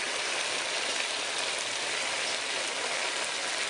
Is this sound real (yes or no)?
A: yes